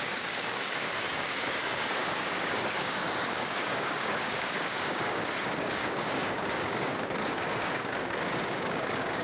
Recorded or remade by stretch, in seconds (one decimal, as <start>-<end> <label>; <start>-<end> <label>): 0.0-9.2 remade